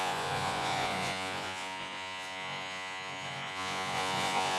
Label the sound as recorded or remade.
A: remade